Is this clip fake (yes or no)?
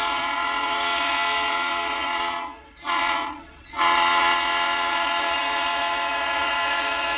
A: yes